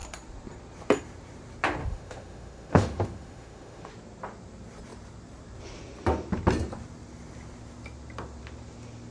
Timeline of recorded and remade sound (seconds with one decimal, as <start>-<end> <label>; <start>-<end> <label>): 0.0-1.8 recorded; 1.8-3.9 remade; 3.9-9.1 recorded